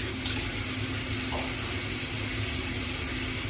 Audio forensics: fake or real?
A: real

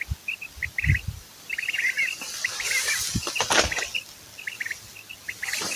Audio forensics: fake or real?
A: real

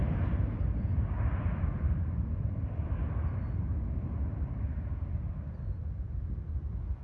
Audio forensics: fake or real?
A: real